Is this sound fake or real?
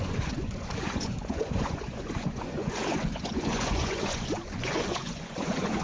fake